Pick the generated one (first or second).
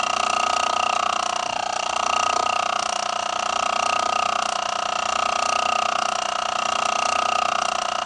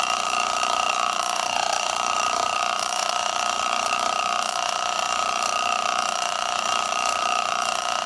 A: second